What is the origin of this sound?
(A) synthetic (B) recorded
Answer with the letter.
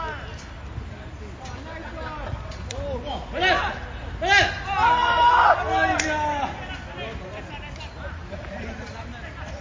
B